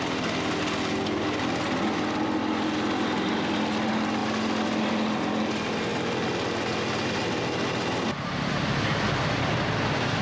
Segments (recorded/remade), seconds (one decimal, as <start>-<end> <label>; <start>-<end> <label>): 0.0-10.2 recorded